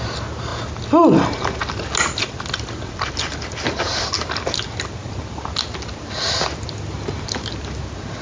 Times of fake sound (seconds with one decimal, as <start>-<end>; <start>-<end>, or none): none